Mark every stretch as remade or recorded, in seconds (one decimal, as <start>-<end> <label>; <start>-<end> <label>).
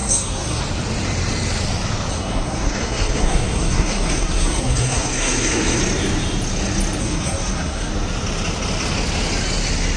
0.0-0.6 remade; 0.6-2.1 recorded; 2.1-5.8 remade; 5.8-7.0 recorded; 7.0-7.9 remade; 7.9-10.0 recorded